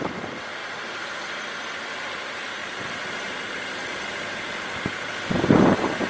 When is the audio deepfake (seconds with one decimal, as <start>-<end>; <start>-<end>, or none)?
0.6-2.2; 2.6-5.2